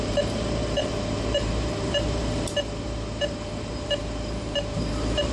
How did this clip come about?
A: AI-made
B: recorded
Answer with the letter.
A